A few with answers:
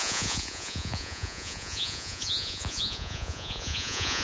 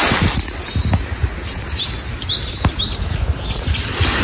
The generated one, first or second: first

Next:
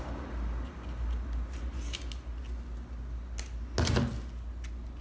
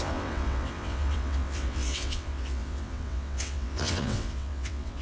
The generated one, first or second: second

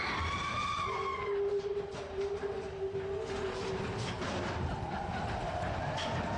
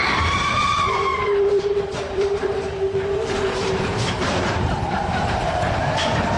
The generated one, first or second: second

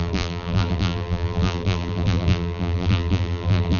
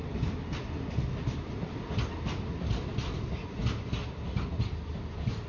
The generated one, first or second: first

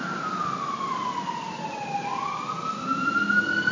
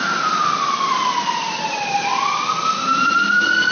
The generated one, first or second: second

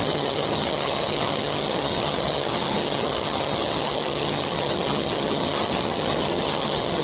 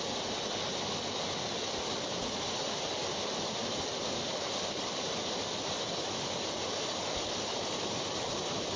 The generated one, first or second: first